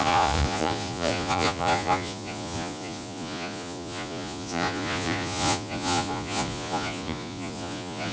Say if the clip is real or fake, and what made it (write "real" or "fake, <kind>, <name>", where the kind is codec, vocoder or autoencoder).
fake, vocoder, Vocos